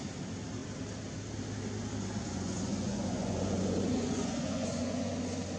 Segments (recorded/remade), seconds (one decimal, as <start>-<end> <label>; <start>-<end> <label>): 0.0-2.2 recorded; 2.2-5.1 remade; 5.1-5.6 recorded